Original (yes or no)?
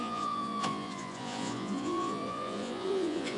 no